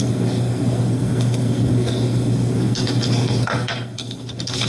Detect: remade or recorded remade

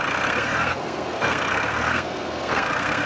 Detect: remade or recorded remade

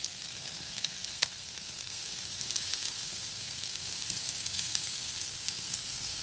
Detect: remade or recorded remade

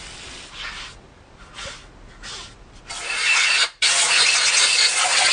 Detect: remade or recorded recorded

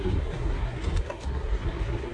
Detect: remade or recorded remade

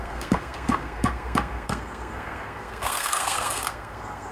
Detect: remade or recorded remade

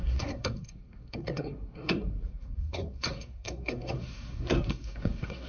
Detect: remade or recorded remade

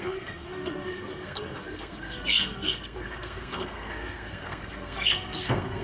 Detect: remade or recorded remade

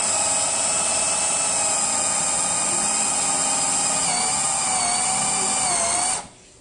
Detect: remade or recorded recorded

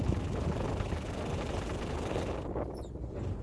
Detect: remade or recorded recorded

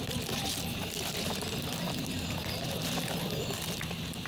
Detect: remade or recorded recorded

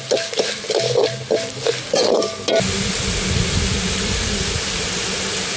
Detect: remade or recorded recorded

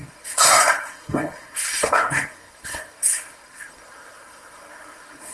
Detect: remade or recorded remade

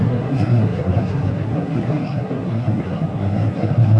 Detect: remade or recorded remade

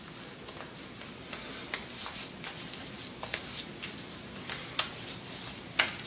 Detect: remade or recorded recorded